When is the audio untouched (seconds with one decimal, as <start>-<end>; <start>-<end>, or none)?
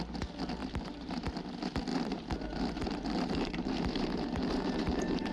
0.0-0.6; 1.3-1.9